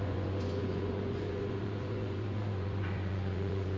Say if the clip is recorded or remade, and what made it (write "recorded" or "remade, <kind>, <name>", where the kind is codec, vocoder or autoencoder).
remade, vocoder, Vocos